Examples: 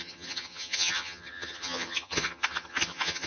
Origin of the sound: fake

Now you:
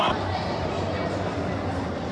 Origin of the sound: real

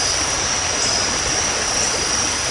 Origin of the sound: real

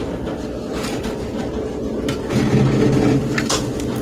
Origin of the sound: real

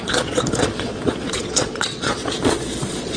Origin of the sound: fake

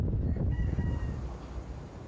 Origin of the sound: real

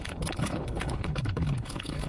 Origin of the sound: fake